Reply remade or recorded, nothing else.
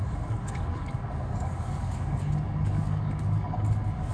remade